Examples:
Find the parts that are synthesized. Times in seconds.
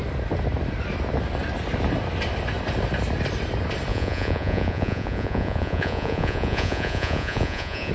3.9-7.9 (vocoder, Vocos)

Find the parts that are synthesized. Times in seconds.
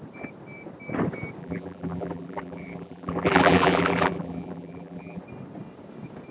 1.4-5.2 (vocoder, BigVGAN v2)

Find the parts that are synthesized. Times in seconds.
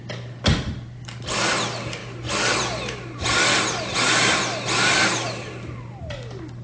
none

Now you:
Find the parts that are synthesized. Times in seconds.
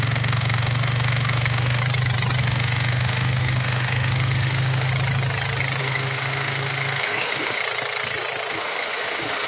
0.0-1.8 (autoencoder, DAC-VAE); 2.4-4.9; 5.8-7.6; 8.5-9.5